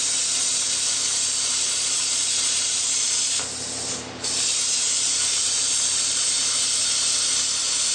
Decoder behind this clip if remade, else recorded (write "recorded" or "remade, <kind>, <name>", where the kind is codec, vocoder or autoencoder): remade, vocoder, BigVGAN v2